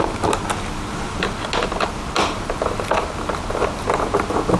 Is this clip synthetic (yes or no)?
no